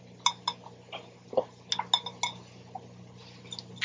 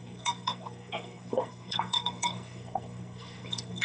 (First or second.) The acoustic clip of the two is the first